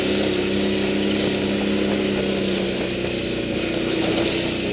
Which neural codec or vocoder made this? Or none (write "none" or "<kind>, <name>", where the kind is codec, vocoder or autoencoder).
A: none